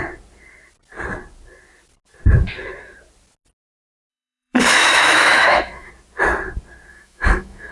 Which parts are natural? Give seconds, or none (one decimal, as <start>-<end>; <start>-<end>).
0.0-4.1; 5.9-6.9